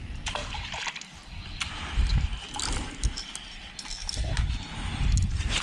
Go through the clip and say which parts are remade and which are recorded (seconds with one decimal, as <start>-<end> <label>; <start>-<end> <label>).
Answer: 0.0-5.6 recorded